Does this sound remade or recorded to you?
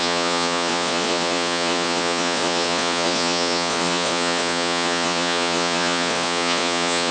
remade